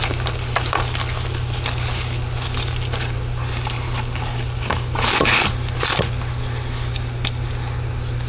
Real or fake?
real